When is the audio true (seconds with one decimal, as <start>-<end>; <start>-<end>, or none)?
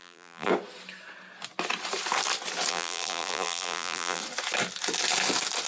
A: 0.5-2.7; 4.2-5.7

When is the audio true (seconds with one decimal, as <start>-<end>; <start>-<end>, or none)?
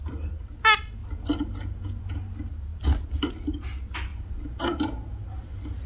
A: 0.0-5.9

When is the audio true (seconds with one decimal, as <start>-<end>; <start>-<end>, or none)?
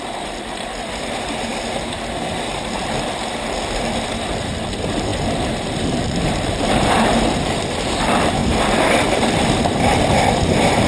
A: none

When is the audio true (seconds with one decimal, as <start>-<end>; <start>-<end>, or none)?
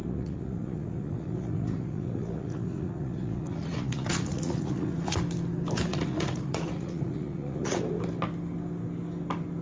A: 5.2-5.9; 7.8-9.6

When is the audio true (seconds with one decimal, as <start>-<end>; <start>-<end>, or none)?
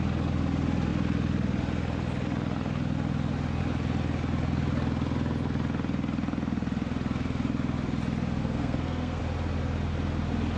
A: 0.0-8.4; 9.2-10.6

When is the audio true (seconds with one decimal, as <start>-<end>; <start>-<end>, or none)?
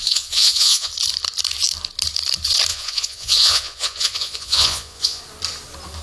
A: 0.9-2.7; 5.2-6.0